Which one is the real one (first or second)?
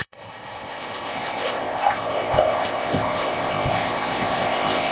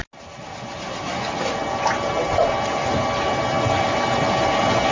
second